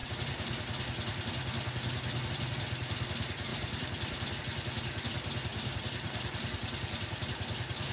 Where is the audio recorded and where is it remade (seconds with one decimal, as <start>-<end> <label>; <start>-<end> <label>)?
0.0-3.5 recorded; 3.5-4.4 remade; 4.4-5.5 recorded; 5.5-7.3 remade; 7.3-7.9 recorded